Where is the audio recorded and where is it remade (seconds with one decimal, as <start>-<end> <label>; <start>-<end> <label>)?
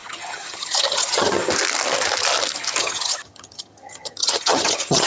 0.0-1.4 remade; 1.4-2.8 recorded; 2.8-5.1 remade